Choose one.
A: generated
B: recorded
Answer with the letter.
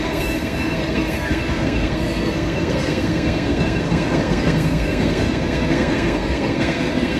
A